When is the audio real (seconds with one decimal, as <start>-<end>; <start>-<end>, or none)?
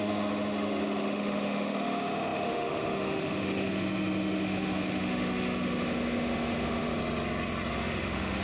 7.0-7.7